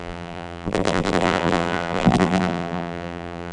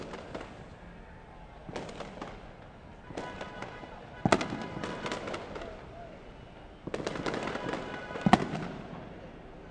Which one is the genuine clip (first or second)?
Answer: second